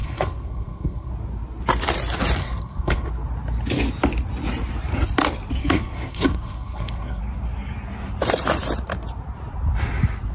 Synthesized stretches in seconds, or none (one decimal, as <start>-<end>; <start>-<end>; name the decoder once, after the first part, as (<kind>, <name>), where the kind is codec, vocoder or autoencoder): 0.0-1.1 (codec, SNAC); 2.4-3.1; 5.6-7.2